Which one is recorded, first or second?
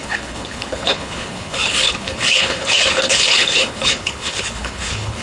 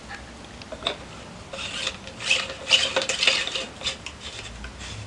second